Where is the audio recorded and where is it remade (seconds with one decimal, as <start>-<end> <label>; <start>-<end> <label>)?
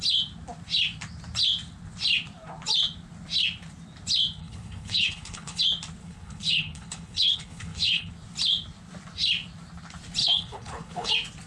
0.0-4.4 recorded; 4.4-5.6 remade; 5.6-6.0 recorded; 6.0-8.1 remade; 8.1-10.2 recorded; 10.2-11.1 remade; 11.1-11.5 recorded